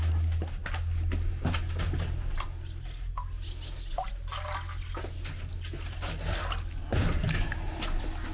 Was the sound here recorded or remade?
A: recorded